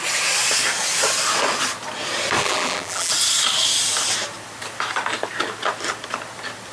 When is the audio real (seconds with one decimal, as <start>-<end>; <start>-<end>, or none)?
0.0-2.4; 3.1-6.7